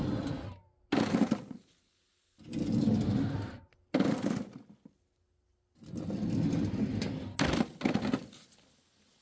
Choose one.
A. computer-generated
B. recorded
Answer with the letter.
B